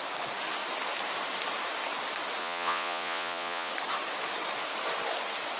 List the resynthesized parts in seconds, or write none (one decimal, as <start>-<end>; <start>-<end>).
2.4-3.7